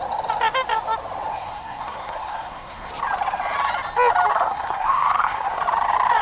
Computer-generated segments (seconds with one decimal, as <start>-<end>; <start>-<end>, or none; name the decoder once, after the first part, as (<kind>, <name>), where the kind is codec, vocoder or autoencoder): 1.3-2.9 (codec, SNAC); 4.3-5.6